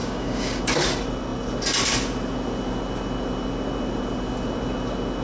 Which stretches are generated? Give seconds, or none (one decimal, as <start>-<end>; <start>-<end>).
0.0-0.6